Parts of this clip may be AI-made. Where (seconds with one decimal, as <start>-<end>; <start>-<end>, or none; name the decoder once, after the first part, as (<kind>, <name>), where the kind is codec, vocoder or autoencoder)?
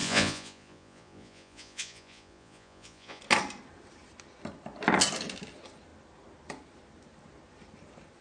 0.0-3.2 (vocoder, Vocos)